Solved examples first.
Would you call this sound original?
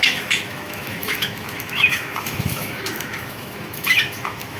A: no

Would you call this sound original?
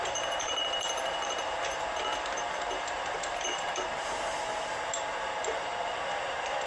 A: no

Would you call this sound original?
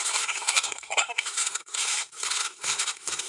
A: no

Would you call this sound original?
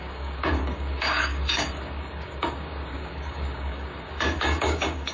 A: no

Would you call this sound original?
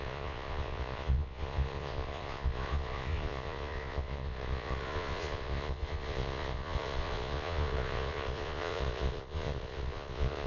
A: no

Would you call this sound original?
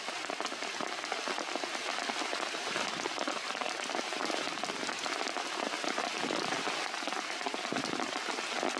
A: yes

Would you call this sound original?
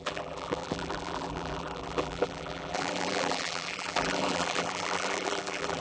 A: no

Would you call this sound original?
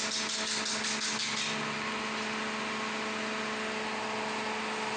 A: yes